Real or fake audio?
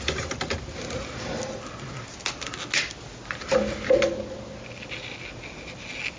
real